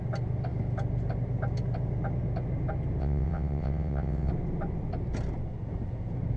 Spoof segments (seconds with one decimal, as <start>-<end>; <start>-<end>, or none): 3.0-4.3